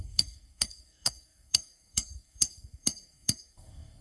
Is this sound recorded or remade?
remade